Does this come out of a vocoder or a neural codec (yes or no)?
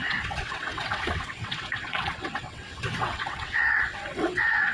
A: yes